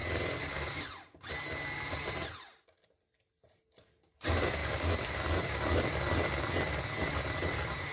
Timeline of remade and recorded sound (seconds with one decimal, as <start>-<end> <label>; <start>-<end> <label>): 0.0-1.3 remade; 1.3-4.6 recorded; 4.6-6.3 remade; 6.3-7.9 recorded